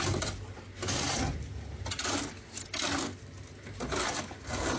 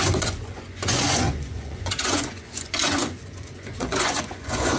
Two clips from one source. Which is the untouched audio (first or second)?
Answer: first